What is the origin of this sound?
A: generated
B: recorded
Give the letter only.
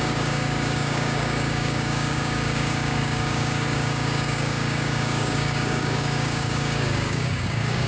A